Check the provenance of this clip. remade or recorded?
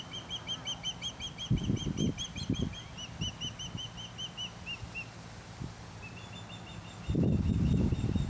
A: recorded